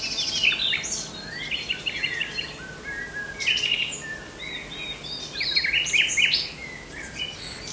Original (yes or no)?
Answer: yes